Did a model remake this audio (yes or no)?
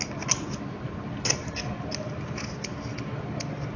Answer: no